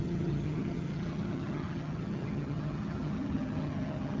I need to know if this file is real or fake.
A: fake